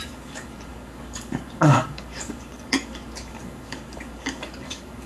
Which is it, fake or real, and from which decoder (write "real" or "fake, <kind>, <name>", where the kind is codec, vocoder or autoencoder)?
fake, codec, DAC